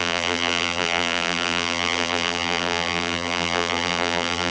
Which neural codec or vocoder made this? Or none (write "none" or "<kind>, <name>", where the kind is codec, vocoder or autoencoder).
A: vocoder, BigVGAN v2